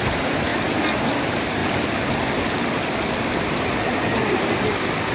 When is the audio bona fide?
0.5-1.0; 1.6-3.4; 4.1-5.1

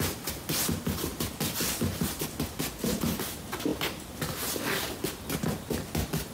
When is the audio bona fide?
0.0-1.1; 2.6-6.3

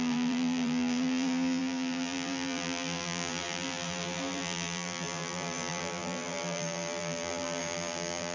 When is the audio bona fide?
none